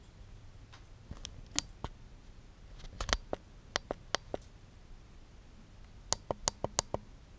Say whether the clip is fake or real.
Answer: real